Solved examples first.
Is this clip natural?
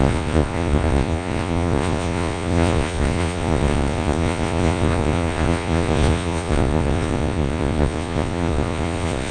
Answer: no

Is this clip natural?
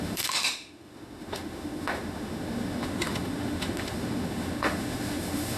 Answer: no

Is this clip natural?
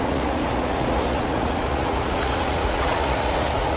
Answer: no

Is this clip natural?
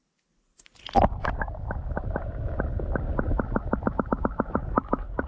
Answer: yes